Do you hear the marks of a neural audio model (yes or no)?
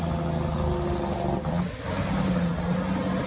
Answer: no